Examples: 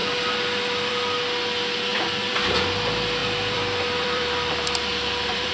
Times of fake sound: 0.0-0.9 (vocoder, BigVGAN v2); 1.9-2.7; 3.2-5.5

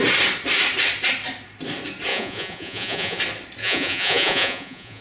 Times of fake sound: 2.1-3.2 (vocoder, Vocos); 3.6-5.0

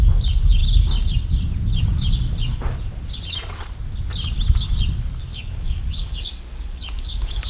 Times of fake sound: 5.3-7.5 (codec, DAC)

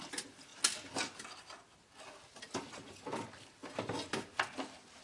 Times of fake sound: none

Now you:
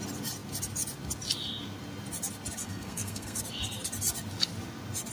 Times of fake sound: 2.6-3.4 (codec, SNAC)

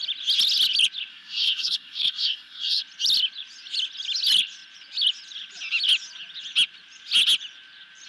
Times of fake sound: 1.1-2.8 (codec, SNAC)